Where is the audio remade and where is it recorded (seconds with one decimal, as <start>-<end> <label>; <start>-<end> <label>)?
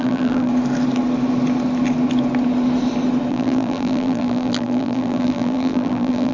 0.0-0.5 remade; 0.5-3.3 recorded; 3.3-6.3 remade